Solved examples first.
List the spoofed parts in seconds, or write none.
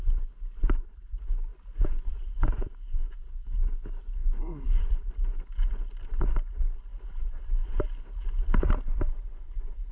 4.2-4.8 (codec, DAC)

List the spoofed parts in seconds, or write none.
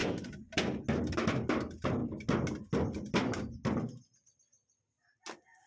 none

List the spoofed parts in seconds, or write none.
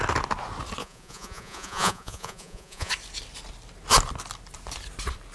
0.8-2.9 (vocoder, Vocos)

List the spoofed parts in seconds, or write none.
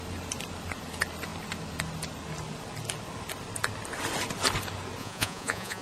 5.0-5.8 (vocoder, Vocos)